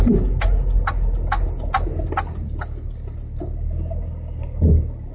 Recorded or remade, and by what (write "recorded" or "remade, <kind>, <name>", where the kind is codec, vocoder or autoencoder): recorded